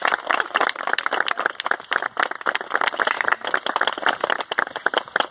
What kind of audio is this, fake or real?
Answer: real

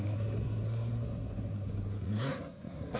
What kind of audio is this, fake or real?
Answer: fake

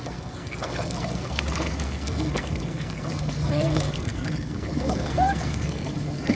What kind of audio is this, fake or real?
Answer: fake